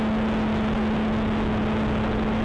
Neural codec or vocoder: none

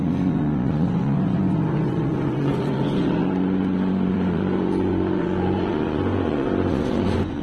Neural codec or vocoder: vocoder, Vocos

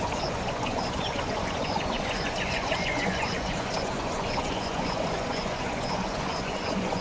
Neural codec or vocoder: vocoder, Vocos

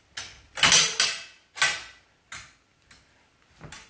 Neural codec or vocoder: none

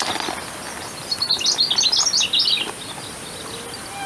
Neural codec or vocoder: none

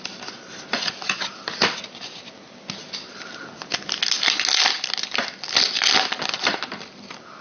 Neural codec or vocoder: none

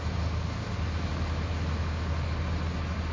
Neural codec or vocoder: none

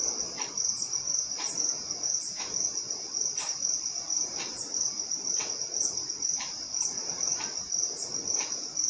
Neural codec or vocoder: none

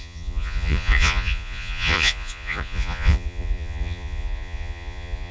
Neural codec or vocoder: vocoder, Vocos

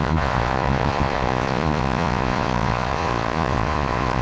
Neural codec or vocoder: vocoder, Vocos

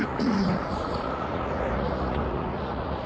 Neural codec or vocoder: vocoder, Vocos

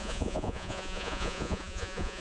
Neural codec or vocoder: vocoder, Vocos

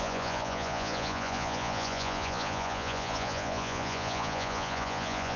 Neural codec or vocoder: vocoder, Vocos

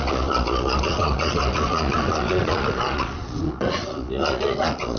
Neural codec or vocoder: vocoder, Vocos